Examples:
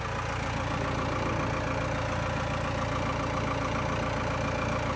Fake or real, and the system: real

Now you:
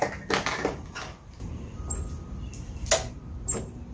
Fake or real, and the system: real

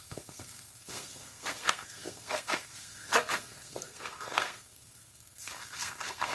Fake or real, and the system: fake, codec, SNAC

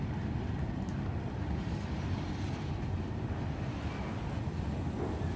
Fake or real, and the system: real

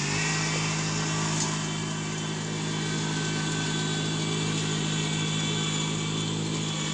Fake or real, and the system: real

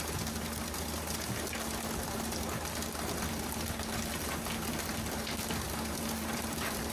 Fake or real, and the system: real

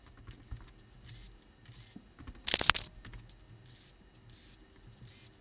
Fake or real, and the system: real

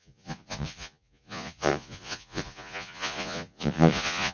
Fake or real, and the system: fake, vocoder, Vocos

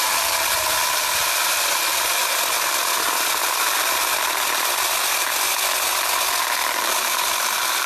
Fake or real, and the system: real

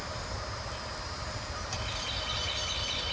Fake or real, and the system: real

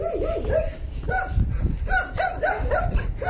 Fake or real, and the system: real